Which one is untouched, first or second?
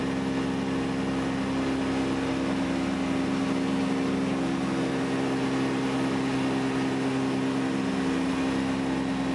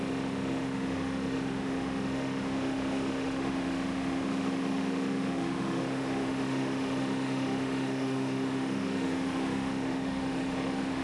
first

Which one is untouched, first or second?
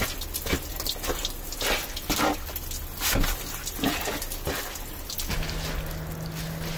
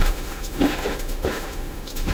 first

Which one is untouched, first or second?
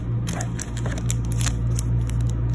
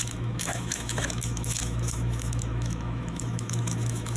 first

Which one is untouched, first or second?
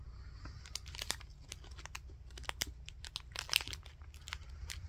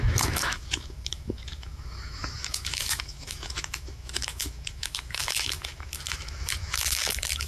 first